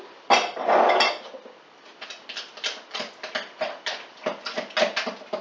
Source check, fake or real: real